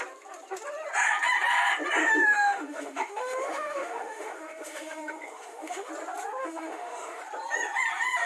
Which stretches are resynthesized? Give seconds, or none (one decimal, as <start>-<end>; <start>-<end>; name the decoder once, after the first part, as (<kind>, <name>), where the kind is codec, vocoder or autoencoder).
2.0-5.9 (autoencoder, DAC-VAE); 6.4-7.2